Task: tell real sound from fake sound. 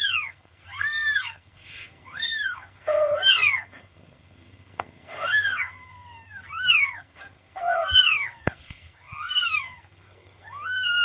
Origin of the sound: fake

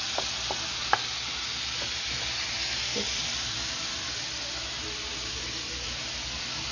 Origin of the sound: real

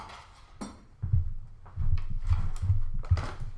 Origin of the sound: real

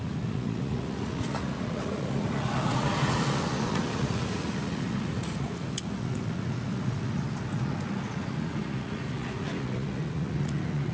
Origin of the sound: fake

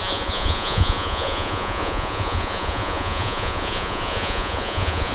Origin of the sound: fake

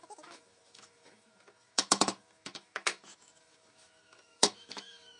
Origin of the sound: fake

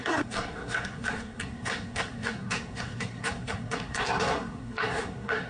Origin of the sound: fake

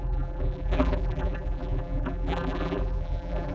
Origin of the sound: fake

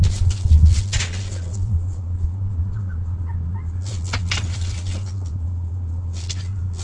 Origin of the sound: fake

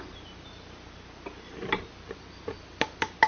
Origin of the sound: real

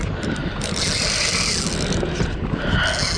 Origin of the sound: real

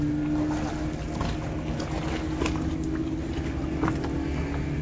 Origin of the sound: real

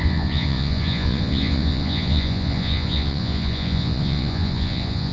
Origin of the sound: fake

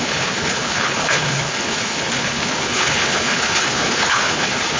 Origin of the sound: fake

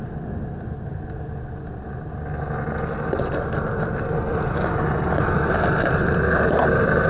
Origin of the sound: real